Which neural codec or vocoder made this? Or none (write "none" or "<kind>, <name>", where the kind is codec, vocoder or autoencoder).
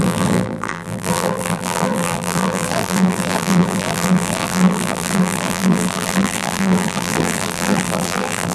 vocoder, BigVGAN v2